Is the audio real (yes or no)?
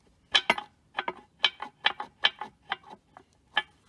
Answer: yes